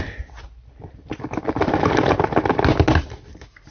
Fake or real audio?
real